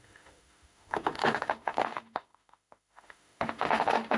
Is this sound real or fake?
fake